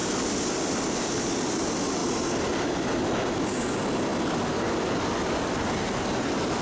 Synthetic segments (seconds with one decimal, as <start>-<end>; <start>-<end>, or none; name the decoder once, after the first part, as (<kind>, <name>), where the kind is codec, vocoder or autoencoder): none